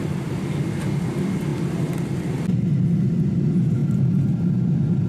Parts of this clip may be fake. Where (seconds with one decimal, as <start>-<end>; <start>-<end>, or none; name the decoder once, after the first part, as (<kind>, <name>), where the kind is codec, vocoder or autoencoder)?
1.5-2.1 (vocoder, BigVGAN v2); 3.8-4.4